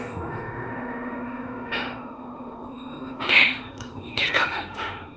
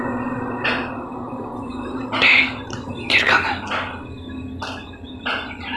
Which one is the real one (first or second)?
second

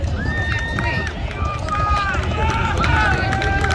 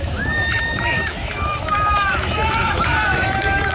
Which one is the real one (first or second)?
first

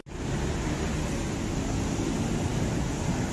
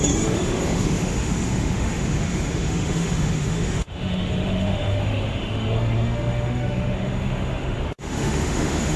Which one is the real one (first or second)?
first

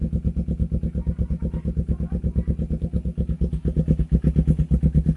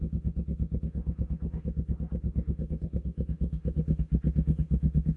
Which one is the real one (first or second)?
first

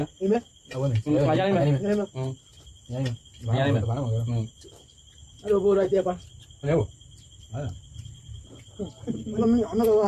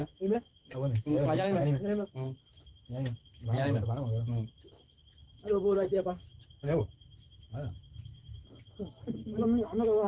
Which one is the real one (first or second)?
first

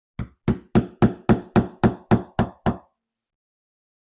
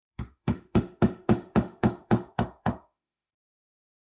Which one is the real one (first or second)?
first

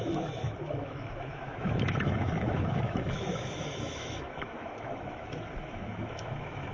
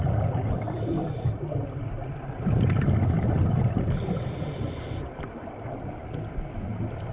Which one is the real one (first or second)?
second